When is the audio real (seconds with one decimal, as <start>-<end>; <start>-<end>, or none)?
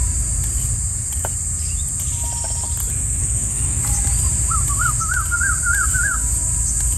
0.0-3.2; 3.8-7.0